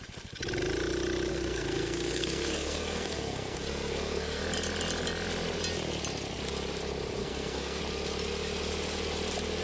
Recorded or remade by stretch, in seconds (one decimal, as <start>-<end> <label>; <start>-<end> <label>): 0.0-1.3 recorded; 1.3-4.4 remade; 4.4-7.2 recorded; 7.2-7.8 remade; 7.8-9.6 recorded

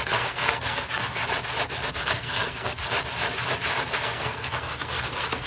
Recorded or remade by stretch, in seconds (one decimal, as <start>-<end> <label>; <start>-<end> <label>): 0.0-1.2 remade; 1.2-1.9 recorded; 1.9-2.8 remade; 2.8-3.8 recorded; 3.8-5.5 remade

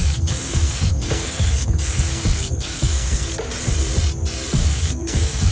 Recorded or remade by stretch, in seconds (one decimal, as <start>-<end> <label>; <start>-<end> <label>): 0.0-3.3 remade; 3.3-4.6 recorded; 4.6-5.5 remade

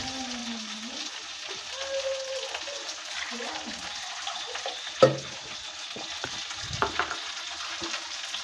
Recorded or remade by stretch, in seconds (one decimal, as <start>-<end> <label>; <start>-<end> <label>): 0.0-8.4 recorded

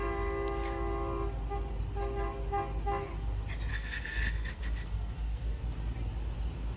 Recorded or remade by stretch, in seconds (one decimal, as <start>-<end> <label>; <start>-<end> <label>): 0.0-3.7 recorded; 3.7-5.6 remade; 5.6-6.8 recorded

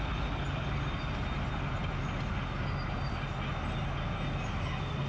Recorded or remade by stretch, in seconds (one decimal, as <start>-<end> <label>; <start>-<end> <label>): 0.0-5.1 recorded